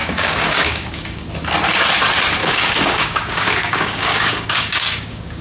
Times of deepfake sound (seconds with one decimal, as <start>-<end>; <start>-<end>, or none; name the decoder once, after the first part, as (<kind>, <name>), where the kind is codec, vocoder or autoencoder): 0.0-1.3 (codec, DAC); 2.4-5.4